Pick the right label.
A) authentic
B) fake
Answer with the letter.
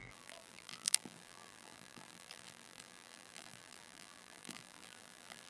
B